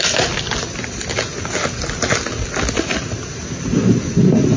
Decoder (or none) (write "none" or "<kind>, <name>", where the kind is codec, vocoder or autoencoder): none